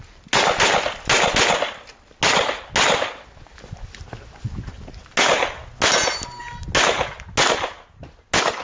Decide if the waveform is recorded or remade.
recorded